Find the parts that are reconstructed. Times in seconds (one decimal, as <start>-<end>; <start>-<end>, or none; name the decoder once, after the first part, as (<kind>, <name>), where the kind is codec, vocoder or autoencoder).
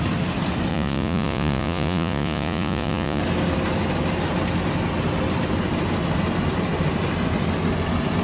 0.7-3.2 (vocoder, Vocos)